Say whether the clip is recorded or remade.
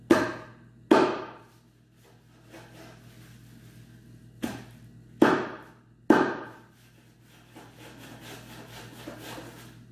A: recorded